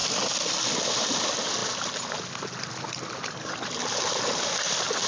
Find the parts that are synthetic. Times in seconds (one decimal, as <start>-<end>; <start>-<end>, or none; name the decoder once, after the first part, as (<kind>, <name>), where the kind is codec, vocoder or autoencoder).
none